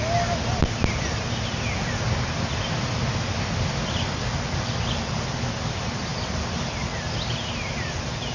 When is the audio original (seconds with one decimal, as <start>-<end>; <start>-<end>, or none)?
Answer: 0.0-3.8; 5.4-6.1; 7.0-8.3